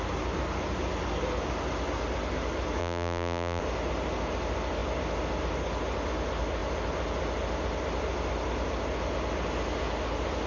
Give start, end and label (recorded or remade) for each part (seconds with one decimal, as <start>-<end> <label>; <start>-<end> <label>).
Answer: 0.0-2.8 recorded; 2.8-3.6 remade; 3.6-10.5 recorded